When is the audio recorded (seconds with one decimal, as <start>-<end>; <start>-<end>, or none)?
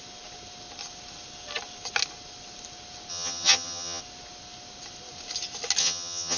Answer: 0.0-3.1; 4.0-5.8